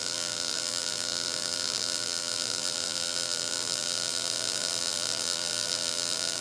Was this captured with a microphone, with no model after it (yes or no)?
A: no